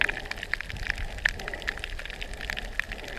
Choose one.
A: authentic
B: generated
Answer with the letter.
A